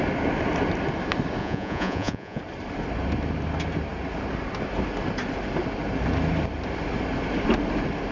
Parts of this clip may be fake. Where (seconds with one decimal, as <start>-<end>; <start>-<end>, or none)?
1.4-2.4